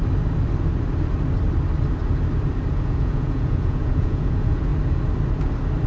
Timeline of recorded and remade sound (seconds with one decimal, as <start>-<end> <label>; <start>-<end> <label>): 0.0-2.7 recorded; 2.7-4.7 remade; 4.7-5.9 recorded